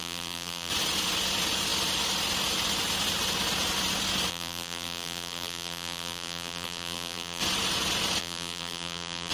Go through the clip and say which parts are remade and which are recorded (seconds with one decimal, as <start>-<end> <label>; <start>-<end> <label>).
0.0-0.7 remade; 0.7-4.3 recorded; 4.3-7.4 remade; 7.4-8.2 recorded; 8.2-9.3 remade